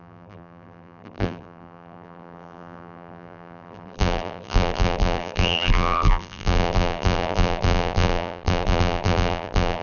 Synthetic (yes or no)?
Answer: yes